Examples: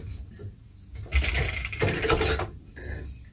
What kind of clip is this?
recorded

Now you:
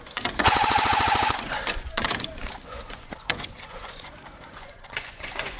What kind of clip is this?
remade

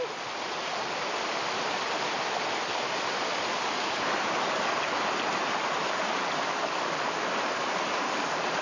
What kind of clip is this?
recorded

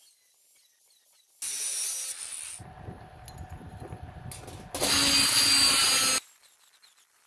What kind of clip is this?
recorded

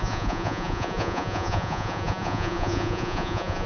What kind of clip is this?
remade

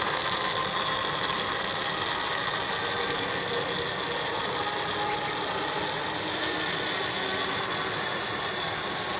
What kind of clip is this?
recorded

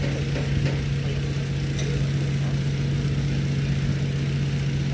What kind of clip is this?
recorded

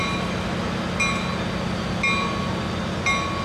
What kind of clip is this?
recorded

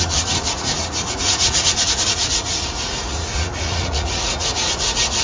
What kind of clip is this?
remade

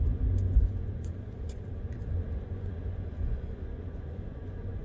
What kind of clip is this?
remade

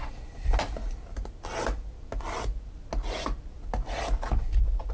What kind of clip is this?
recorded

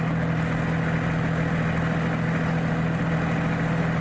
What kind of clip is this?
recorded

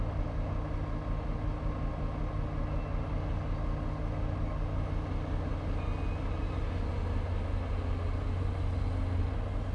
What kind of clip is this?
recorded